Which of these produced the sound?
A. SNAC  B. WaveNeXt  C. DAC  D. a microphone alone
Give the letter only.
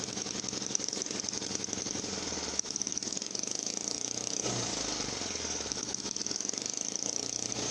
C